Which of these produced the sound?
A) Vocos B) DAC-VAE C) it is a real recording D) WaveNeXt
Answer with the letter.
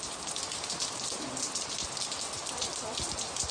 C